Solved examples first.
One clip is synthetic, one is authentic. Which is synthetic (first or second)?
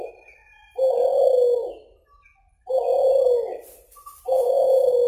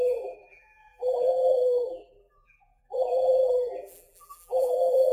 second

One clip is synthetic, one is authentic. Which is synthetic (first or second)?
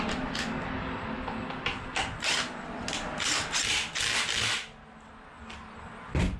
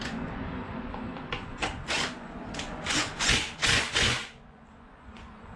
second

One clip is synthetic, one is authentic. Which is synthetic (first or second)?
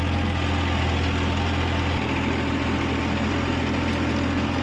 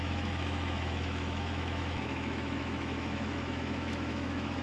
second